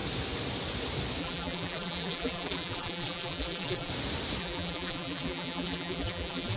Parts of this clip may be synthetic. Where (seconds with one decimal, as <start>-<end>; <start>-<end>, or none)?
1.2-3.9; 4.4-6.6